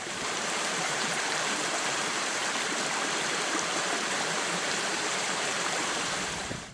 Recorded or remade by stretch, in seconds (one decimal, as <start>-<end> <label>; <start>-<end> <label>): 0.0-2.4 remade; 2.4-3.3 recorded; 3.3-6.7 remade